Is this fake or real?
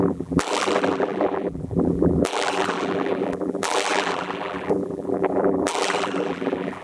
fake